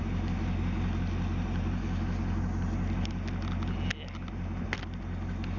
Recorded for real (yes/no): yes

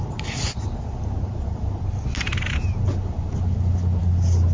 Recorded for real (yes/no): yes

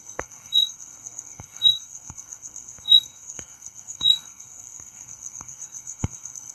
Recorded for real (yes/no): no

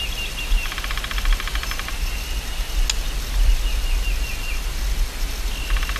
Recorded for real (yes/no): yes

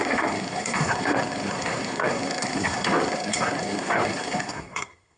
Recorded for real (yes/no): no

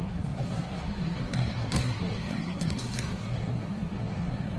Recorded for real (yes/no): no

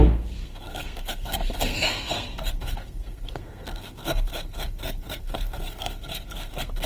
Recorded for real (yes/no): no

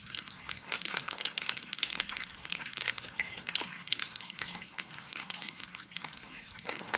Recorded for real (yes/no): no